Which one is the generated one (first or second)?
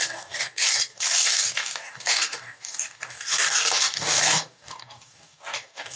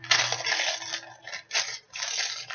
first